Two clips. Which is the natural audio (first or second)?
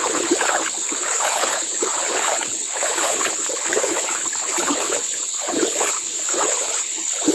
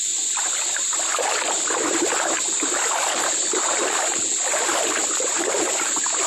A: second